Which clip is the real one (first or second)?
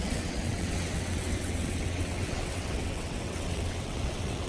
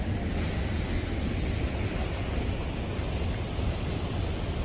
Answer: second